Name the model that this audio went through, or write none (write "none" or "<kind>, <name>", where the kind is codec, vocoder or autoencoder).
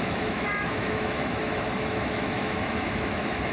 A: autoencoder, DAC-VAE